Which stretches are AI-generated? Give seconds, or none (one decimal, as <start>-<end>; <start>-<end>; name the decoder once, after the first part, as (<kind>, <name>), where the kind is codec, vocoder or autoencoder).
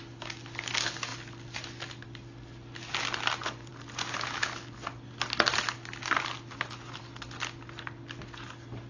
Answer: none